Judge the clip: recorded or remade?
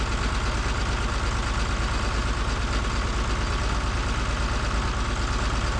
recorded